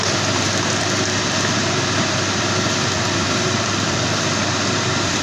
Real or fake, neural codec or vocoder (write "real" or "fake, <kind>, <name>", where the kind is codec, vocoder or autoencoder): fake, vocoder, BigVGAN v2